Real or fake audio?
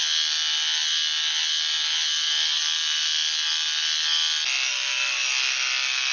real